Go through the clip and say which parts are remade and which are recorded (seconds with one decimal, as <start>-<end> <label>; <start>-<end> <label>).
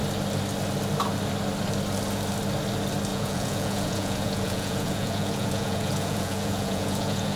0.0-3.1 recorded; 3.1-7.4 remade